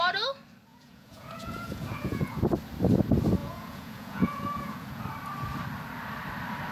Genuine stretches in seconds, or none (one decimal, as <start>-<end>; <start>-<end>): 0.0-0.7; 2.4-3.4; 5.0-6.7